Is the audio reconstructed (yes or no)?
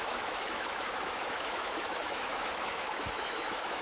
yes